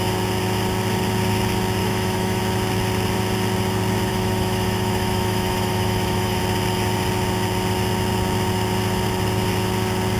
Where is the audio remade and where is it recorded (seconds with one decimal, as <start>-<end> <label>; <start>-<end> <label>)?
0.0-1.8 recorded; 1.8-2.4 remade; 2.4-4.1 recorded; 4.1-6.4 remade; 6.4-10.2 recorded